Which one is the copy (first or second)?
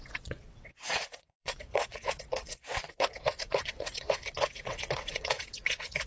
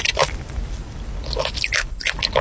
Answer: first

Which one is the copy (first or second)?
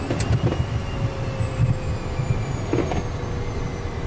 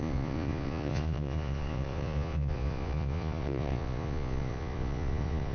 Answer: second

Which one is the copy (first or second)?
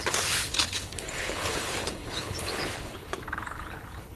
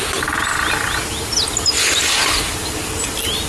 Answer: first